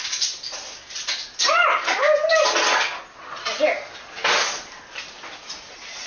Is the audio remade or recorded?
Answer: recorded